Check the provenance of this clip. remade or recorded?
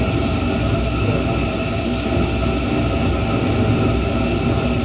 recorded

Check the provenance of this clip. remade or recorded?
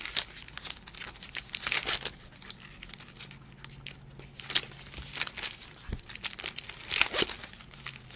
recorded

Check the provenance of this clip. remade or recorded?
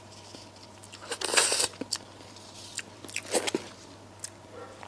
recorded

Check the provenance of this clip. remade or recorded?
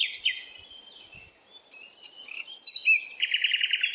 recorded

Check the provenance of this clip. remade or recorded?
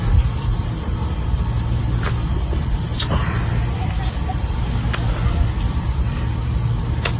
recorded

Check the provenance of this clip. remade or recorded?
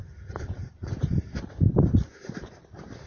remade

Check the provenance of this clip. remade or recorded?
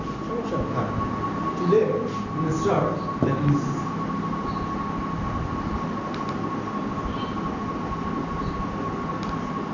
recorded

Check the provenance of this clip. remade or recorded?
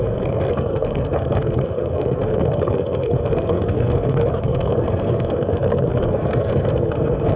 remade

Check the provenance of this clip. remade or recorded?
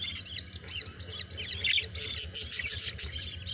recorded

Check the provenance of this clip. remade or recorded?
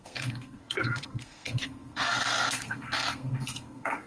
remade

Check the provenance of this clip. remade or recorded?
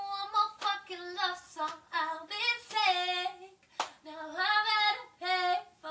recorded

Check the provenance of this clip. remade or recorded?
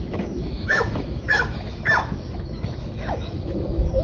remade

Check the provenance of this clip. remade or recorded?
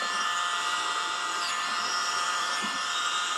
remade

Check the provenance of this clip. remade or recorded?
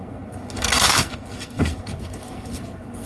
remade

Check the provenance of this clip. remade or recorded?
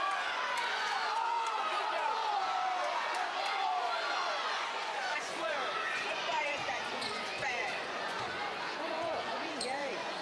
remade